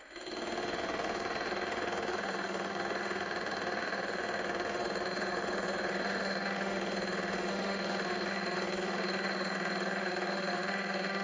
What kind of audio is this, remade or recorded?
remade